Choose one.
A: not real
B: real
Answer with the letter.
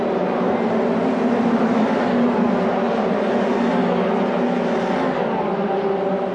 B